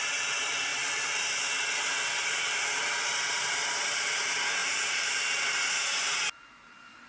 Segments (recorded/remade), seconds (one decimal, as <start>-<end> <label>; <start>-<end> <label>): 0.0-4.6 recorded; 4.6-5.2 remade; 5.2-7.1 recorded